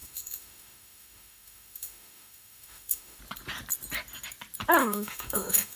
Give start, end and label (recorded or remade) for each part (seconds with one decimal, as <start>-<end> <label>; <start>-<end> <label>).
0.0-3.2 remade; 3.2-4.8 recorded; 4.8-5.8 remade